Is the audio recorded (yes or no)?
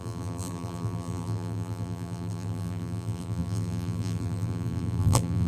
no